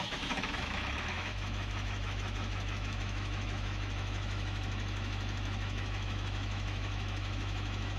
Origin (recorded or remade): remade